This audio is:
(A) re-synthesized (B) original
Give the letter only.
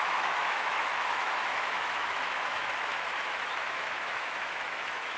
A